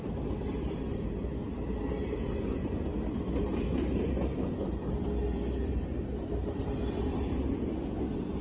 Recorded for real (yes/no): yes